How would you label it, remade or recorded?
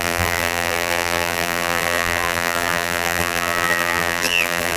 remade